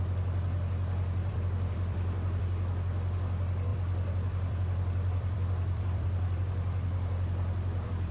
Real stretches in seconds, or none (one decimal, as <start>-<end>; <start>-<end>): 0.0-1.3; 2.4-3.7